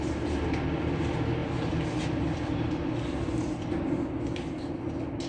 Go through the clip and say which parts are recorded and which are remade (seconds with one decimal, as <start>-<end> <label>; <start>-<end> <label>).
0.0-5.3 recorded